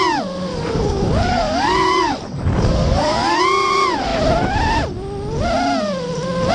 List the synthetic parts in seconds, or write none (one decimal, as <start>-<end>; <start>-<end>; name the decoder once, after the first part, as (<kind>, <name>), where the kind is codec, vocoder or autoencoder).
0.5-3.4 (codec, DAC)